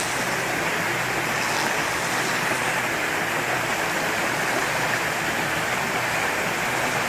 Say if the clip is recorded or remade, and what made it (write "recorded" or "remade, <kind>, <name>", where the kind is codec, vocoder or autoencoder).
recorded